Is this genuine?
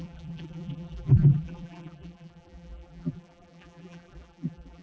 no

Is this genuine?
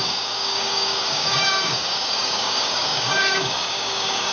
no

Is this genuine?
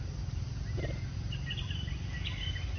yes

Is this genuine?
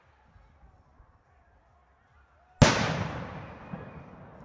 yes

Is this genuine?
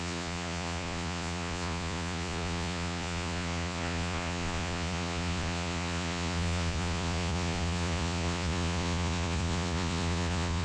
no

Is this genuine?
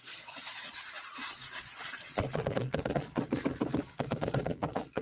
no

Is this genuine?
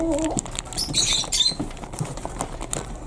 yes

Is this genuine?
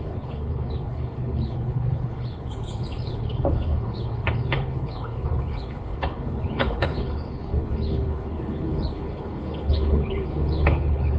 no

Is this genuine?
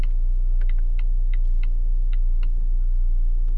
yes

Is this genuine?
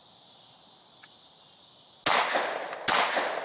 yes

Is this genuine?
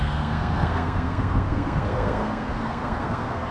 no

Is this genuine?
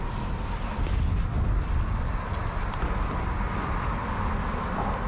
yes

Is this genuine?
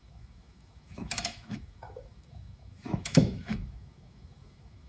no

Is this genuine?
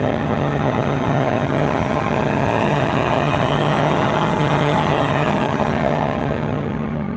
no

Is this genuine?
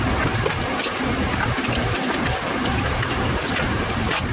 no